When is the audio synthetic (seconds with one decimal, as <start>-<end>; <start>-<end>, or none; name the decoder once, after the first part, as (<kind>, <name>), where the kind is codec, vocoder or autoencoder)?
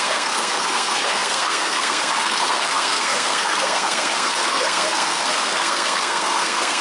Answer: 0.0-6.8 (codec, SNAC)